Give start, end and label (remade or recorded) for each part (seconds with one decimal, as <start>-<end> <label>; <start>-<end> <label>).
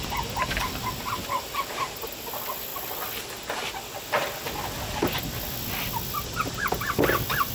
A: 0.0-7.5 recorded